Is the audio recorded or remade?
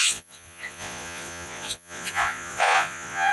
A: remade